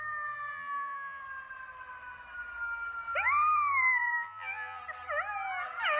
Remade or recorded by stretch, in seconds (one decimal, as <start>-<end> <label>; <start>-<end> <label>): 0.0-0.5 recorded; 0.5-1.2 remade; 1.2-3.7 recorded; 3.7-4.8 remade; 4.8-6.0 recorded